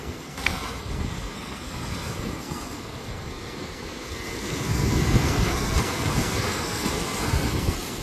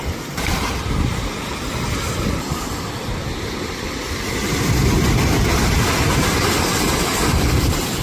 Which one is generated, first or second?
first